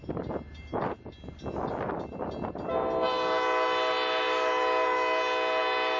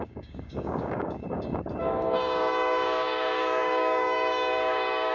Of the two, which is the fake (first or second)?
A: second